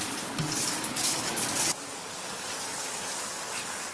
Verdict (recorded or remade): remade